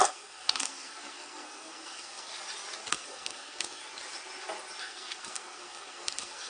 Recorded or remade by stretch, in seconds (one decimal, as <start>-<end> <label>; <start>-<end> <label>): 0.0-2.3 remade; 2.3-2.9 recorded; 2.9-3.8 remade; 3.8-4.8 recorded; 4.8-6.5 remade